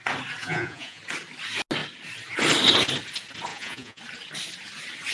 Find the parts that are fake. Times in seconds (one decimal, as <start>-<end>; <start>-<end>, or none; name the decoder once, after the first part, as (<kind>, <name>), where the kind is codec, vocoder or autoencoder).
0.4-1.0 (vocoder, Vocos); 3.5-4.0